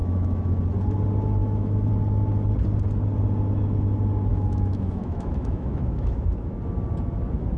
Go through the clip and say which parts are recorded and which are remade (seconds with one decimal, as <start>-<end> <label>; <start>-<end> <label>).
0.0-0.6 remade; 0.6-1.4 recorded; 1.4-1.9 remade; 1.9-4.3 recorded; 4.3-6.6 remade; 6.6-7.6 recorded